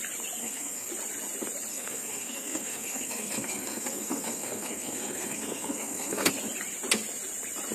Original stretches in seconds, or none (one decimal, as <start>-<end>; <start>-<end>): 0.0-0.4; 0.9-1.7; 6.3-7.7